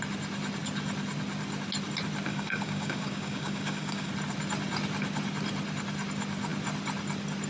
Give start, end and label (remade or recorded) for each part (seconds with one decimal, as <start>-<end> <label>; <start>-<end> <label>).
0.0-2.3 recorded; 2.3-4.1 remade; 4.1-7.5 recorded